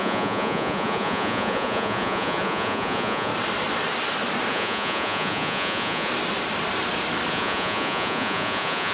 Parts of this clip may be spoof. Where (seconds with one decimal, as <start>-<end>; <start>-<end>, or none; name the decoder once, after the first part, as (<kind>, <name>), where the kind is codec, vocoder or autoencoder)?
0.0-3.3 (vocoder, Vocos); 4.5-6.1; 7.3-8.9